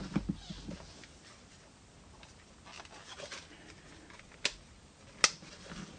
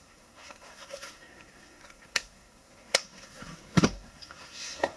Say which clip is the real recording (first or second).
first